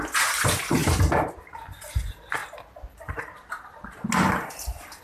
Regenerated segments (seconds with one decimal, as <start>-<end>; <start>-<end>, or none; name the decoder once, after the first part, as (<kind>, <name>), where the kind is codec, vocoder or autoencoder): none